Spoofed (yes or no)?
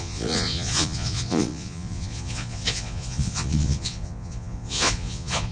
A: yes